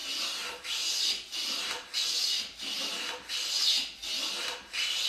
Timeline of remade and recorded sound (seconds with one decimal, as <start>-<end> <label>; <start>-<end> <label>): 0.0-5.1 recorded